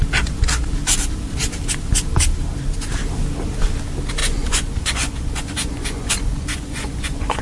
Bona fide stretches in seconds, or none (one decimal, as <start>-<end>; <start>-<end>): 0.0-4.2